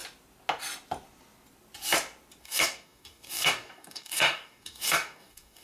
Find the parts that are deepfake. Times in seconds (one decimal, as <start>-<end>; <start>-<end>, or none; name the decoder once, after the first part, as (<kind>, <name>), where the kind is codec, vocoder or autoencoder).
2.4-5.6 (codec, DAC)